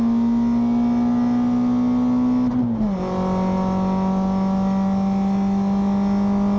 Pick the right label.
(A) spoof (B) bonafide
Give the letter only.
B